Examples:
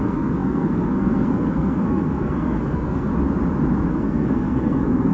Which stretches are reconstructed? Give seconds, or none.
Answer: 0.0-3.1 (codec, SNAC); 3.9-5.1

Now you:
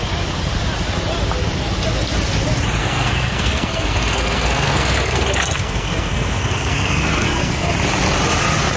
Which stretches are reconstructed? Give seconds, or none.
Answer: 2.8-7.7 (codec, SNAC)

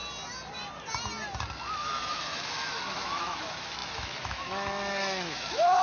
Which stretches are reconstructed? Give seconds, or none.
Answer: 1.7-5.8 (autoencoder, DAC-VAE)

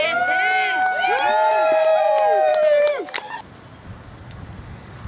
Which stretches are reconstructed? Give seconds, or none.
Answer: 1.5-2.1 (vocoder, BigVGAN v2); 2.5-5.1

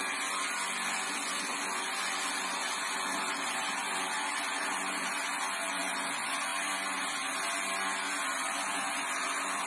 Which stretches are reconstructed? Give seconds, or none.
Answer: 0.0-6.5 (vocoder, Vocos); 8.4-9.7

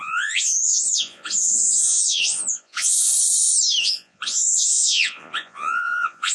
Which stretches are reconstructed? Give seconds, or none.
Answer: 0.0-3.1 (vocoder, Vocos); 3.8-6.3